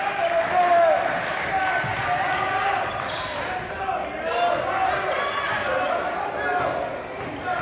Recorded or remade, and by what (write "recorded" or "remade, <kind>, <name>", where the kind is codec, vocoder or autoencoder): recorded